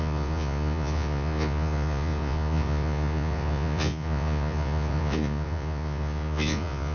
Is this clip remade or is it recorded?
remade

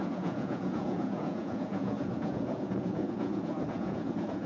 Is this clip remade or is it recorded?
remade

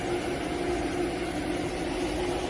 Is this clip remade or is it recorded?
recorded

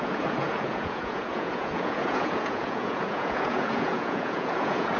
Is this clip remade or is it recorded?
remade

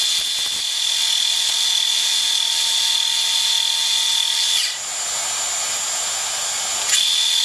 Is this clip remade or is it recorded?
recorded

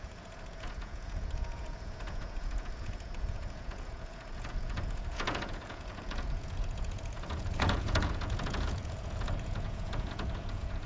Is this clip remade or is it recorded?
remade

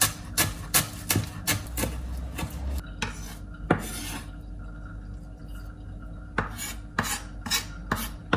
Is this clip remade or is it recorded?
recorded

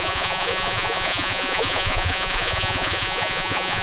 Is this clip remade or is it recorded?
remade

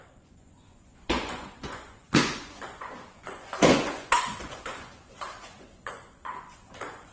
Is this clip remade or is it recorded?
remade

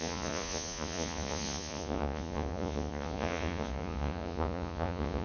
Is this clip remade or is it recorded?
remade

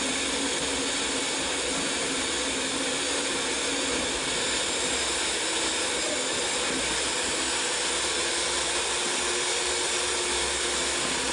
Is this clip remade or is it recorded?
recorded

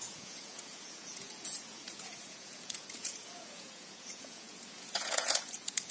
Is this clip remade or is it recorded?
remade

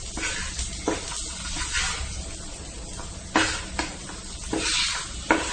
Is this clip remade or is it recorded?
recorded